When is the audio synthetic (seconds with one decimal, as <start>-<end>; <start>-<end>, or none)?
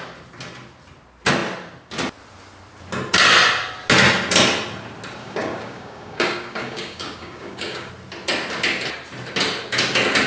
5.2-7.9